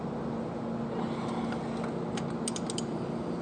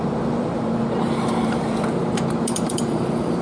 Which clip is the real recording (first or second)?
first